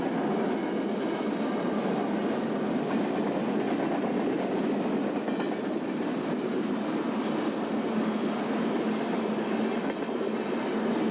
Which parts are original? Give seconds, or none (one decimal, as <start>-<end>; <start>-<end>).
0.0-11.1